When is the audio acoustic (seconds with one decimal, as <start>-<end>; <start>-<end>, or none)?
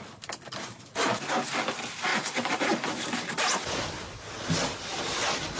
0.0-5.6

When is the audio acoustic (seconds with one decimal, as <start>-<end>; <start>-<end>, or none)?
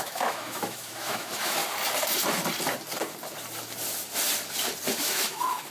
1.6-5.0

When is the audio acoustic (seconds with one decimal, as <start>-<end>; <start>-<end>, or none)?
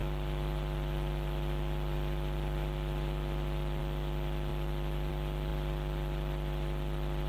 3.8-5.5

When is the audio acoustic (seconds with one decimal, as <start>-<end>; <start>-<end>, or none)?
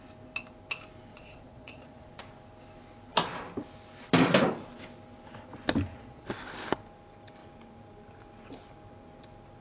0.0-1.1; 2.2-5.9; 6.4-9.6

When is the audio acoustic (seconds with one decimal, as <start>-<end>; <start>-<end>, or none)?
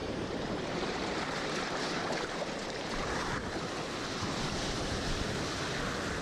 3.6-6.2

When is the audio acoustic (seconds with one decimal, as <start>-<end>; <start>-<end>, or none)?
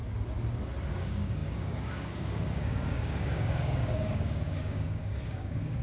0.0-0.9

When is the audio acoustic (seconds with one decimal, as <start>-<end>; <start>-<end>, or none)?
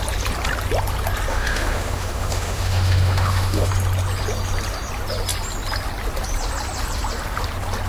0.0-1.3; 3.7-7.9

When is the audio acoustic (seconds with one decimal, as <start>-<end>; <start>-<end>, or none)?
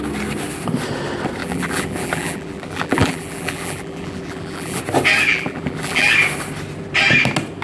0.0-1.4; 4.8-5.3; 6.1-7.6